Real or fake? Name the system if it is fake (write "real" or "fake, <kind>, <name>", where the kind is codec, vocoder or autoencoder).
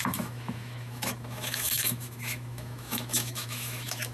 fake, autoencoder, DAC-VAE